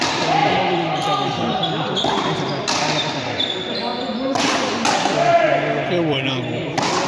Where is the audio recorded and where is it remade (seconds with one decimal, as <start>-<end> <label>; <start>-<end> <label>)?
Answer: 0.0-3.9 remade; 3.9-5.8 recorded; 5.8-7.1 remade